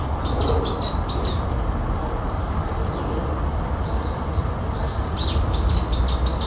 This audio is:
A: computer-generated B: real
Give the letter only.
B